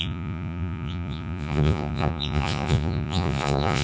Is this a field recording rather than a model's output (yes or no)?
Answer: no